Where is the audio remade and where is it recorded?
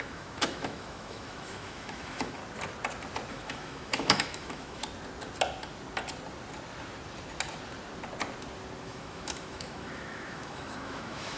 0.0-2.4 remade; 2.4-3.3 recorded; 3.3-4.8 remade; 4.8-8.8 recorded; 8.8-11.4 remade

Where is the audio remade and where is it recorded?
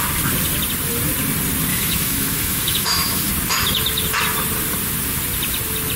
0.0-1.7 recorded; 1.7-3.3 remade; 3.3-6.0 recorded